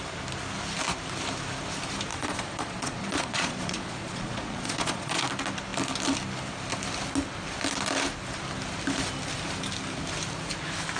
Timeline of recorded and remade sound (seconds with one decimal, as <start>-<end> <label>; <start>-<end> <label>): 0.0-2.1 recorded; 2.1-5.2 remade; 5.2-11.0 recorded